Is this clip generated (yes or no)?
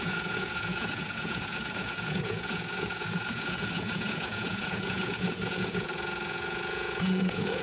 yes